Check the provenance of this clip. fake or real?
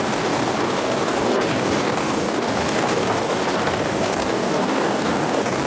fake